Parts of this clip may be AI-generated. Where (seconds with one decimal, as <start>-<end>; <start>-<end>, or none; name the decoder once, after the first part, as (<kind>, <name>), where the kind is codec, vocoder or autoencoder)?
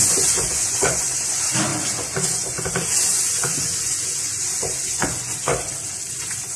0.0-5.5 (vocoder, Vocos); 6.1-6.6